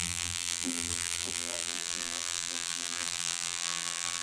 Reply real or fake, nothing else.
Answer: fake